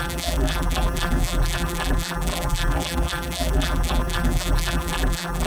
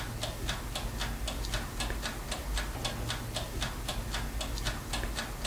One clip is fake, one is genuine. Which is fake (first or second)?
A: first